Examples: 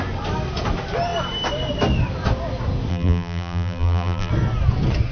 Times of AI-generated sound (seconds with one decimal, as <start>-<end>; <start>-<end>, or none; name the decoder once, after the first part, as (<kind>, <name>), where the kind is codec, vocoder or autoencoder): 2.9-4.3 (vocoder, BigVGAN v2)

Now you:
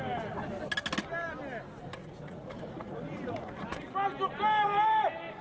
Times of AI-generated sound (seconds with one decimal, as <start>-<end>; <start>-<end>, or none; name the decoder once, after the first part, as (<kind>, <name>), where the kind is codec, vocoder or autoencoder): 2.0-3.7 (vocoder, Vocos)

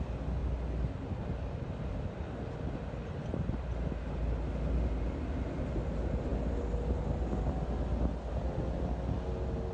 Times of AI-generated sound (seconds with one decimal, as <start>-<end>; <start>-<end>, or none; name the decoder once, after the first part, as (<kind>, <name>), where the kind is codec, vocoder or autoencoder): none